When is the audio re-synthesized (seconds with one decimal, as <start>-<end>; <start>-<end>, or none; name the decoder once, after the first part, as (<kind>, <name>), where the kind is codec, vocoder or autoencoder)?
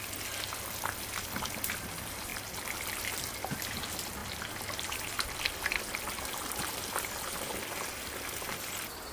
none